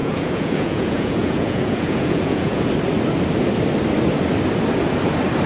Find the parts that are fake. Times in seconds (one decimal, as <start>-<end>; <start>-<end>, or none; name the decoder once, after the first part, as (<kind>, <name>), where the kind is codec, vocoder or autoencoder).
0.0-2.7 (vocoder, Vocos)